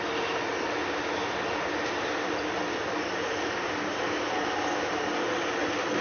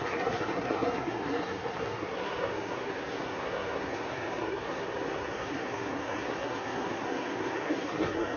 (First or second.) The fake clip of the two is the second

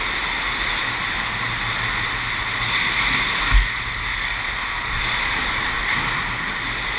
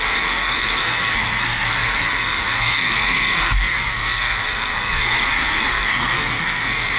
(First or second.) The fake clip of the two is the second